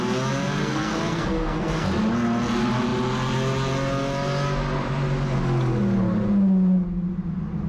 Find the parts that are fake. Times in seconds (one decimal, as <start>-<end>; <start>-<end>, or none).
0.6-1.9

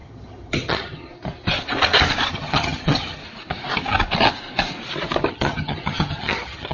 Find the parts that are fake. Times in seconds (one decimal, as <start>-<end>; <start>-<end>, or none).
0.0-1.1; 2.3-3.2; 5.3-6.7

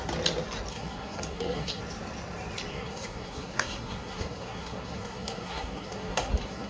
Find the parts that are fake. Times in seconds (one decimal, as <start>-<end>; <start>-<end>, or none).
0.7-1.8; 2.7-6.7